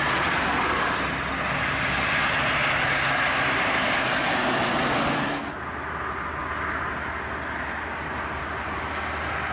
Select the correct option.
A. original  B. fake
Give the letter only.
A